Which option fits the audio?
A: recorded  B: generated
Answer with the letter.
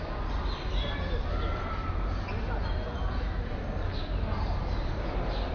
A